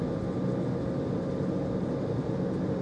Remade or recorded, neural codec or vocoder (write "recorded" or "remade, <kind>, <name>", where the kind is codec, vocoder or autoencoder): recorded